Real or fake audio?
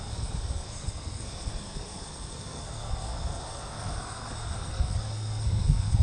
fake